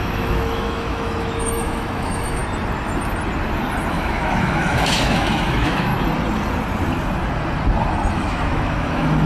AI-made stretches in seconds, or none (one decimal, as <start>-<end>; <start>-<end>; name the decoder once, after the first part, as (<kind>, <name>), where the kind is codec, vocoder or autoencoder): 0.0-2.4 (autoencoder, DAC-VAE); 3.9-5.9; 8.1-9.3